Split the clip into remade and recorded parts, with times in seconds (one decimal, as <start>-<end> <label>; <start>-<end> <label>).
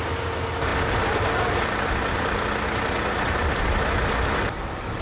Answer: 0.0-0.7 recorded; 0.7-3.7 remade; 3.7-5.0 recorded